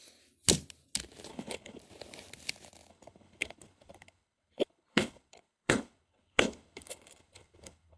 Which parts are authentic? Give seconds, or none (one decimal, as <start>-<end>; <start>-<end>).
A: 0.0-1.3; 1.8-2.9